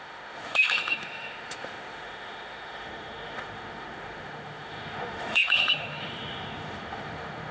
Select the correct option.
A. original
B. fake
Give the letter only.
B